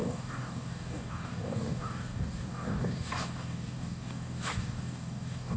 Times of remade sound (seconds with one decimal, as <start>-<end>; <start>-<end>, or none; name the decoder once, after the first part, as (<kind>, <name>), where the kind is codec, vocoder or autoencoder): 0.0-5.6 (codec, DAC)